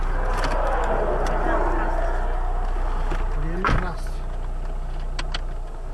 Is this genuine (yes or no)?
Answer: yes